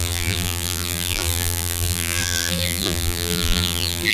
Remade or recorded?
remade